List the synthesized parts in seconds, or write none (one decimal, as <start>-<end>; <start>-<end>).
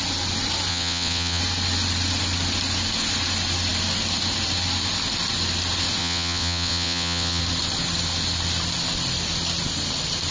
0.7-1.4; 6.0-7.4